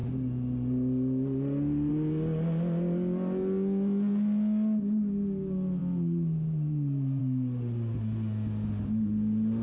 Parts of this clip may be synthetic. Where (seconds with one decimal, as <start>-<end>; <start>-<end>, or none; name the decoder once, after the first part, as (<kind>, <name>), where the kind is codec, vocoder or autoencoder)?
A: none